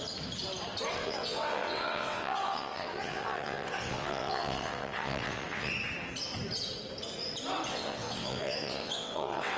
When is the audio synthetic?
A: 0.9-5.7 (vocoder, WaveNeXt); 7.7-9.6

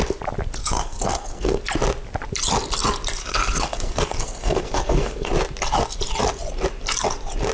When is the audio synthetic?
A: 0.6-1.6 (codec, SNAC); 3.2-5.3

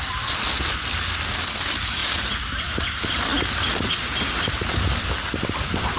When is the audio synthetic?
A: none

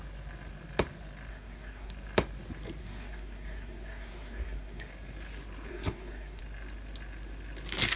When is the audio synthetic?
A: 1.3-1.9 (codec, SNAC); 2.8-4.9; 5.7-6.4

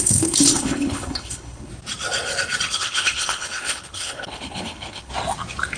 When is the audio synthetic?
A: 0.0-1.7 (codec, HILCodec); 2.7-5.1

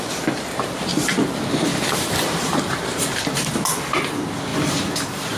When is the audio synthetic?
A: 1.7-3.5 (vocoder, BigVGAN v2); 4.5-5.4